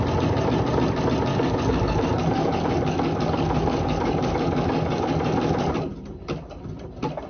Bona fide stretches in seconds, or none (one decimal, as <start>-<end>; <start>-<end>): 0.0-1.3; 5.7-7.3